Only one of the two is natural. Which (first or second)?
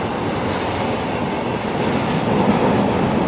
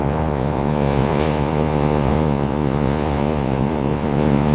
first